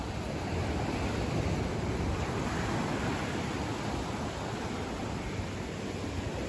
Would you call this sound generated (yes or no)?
no